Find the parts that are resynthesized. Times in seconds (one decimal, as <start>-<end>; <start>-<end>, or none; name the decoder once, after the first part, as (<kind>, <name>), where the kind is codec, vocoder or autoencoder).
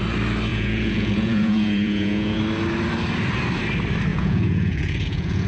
0.5-2.4 (vocoder, Vocos); 4.1-5.5